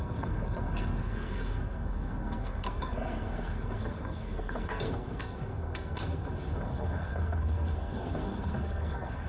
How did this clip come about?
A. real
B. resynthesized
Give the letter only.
B